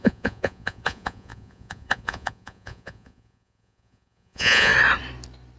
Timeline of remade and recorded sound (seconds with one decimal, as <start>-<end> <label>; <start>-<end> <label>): 0.0-4.7 remade; 4.7-5.6 recorded